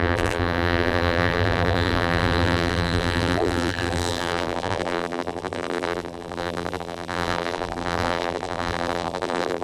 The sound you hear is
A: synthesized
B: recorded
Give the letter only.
A